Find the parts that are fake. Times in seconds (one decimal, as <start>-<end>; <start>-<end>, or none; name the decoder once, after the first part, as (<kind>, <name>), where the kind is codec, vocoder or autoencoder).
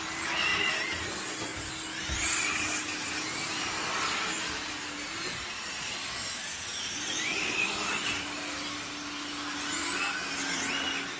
none